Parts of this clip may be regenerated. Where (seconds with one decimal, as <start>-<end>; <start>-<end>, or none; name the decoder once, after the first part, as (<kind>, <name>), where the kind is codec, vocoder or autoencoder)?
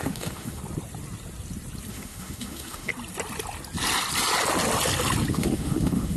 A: 0.0-0.6 (autoencoder, DAC-VAE); 1.9-2.9; 5.3-6.2